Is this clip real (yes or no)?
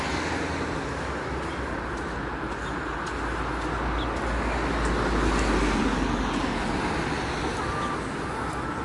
yes